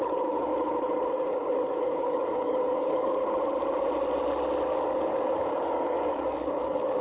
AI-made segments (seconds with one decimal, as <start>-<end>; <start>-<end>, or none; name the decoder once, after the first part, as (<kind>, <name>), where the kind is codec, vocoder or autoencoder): 0.0-0.5 (codec, DAC); 1.1-3.2; 4.7-7.0